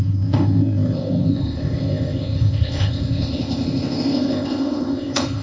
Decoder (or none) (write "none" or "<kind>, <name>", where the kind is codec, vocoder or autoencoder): codec, ZipCodec